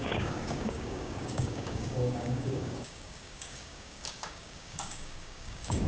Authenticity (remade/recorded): remade